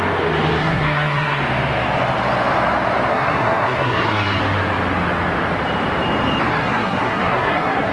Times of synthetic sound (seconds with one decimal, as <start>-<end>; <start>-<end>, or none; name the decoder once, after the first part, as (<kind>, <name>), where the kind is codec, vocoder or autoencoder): 0.6-1.4 (codec, SNAC); 3.1-4.4; 6.5-7.9